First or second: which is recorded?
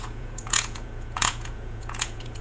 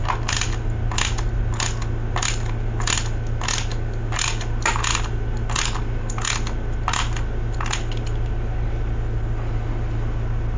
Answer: second